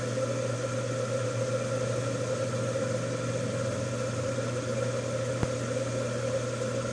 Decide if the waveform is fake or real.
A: real